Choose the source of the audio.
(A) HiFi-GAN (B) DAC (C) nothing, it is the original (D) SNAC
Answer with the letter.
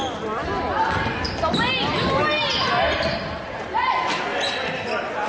C